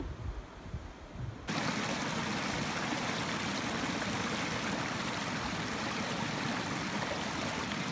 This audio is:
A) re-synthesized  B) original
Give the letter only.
B